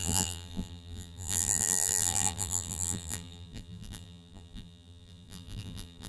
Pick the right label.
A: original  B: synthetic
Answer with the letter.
B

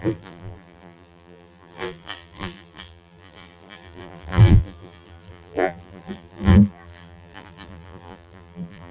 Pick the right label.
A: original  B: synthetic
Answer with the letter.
B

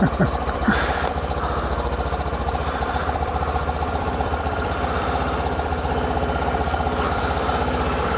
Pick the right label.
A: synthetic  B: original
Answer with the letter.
B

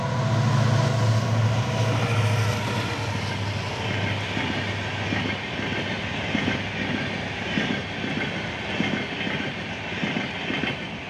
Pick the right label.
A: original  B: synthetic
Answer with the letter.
A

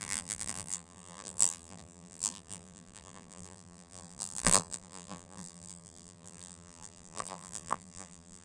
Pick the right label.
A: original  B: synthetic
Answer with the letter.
B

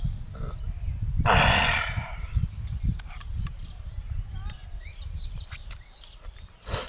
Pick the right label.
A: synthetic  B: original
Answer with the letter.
B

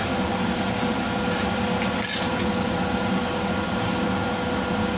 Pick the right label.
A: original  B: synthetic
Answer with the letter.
A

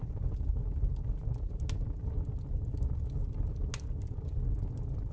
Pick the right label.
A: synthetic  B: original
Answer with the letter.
B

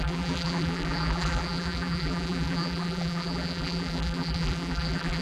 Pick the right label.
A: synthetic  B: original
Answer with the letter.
A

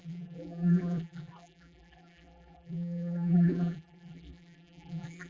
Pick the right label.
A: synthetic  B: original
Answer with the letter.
A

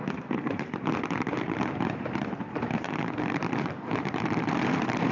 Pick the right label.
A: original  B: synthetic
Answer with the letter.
B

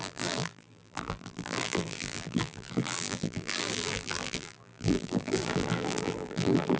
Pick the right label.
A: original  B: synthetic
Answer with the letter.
B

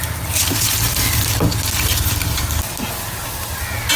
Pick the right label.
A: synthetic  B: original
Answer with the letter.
B